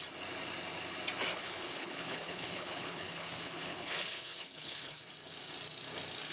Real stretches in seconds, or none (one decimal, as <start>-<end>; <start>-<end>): 0.0-1.3; 5.0-6.3